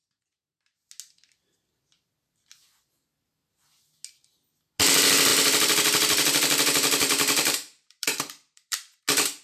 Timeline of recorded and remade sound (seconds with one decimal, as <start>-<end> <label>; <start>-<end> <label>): 0.0-5.3 recorded; 5.3-9.0 remade; 9.0-9.4 recorded